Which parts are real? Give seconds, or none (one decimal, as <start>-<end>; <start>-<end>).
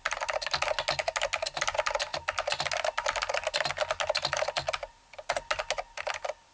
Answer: 0.0-6.5